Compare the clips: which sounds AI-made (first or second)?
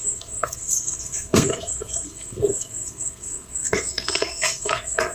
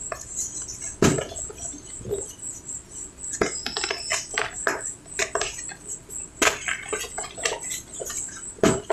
first